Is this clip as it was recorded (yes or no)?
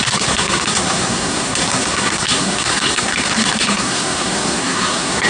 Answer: no